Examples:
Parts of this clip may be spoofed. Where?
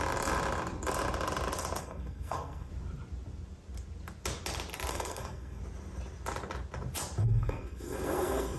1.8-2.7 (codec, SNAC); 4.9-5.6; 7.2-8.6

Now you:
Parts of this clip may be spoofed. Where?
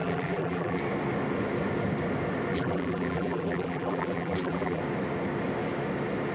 0.0-0.8 (vocoder, BigVGAN v2); 2.5-4.8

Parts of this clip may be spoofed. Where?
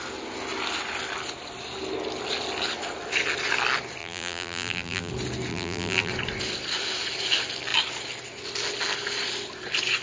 4.0-5.1 (vocoder, BigVGAN v2); 5.5-6.1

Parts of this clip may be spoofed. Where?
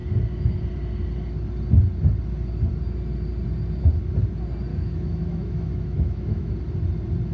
4.7-6.5 (autoencoder, DAC-VAE)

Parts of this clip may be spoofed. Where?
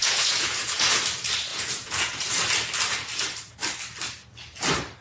0.0-1.0 (vocoder, Vocos); 1.5-2.3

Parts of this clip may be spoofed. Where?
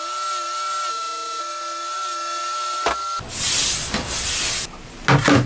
0.9-1.4 (autoencoder, DAC-VAE)